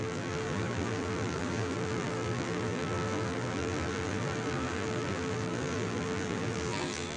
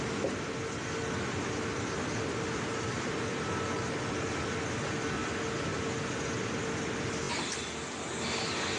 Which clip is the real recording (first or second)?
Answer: second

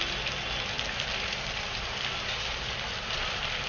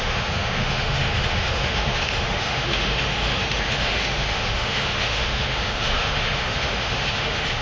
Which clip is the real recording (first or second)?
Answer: first